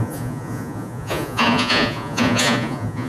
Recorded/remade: remade